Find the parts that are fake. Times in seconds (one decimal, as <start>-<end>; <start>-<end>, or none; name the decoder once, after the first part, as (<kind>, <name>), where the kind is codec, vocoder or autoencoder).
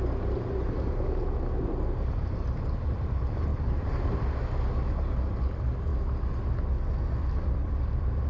3.5-4.6 (vocoder, BigVGAN v2)